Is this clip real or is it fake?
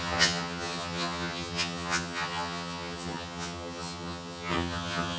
fake